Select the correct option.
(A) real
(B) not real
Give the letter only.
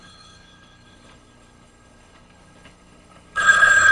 B